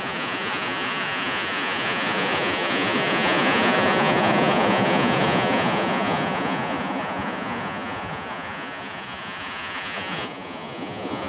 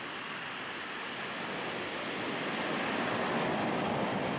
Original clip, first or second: second